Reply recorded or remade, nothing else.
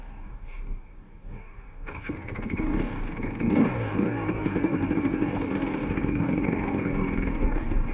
remade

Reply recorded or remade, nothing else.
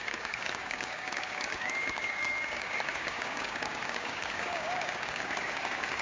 remade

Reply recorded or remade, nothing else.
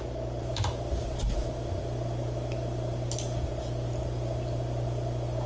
recorded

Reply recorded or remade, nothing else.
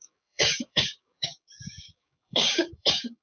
remade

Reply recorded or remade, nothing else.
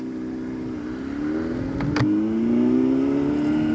recorded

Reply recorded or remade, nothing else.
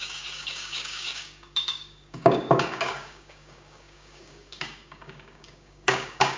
remade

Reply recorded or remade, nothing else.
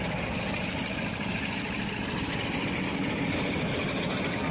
recorded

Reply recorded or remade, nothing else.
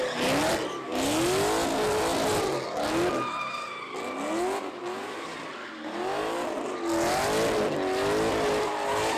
recorded